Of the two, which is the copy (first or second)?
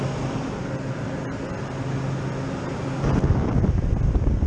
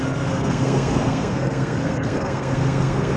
second